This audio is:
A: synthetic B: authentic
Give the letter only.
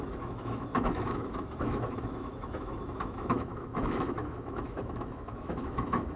A